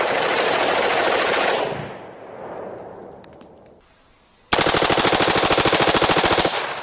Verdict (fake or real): real